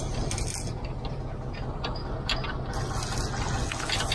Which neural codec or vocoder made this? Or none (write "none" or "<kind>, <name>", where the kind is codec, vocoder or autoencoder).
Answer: none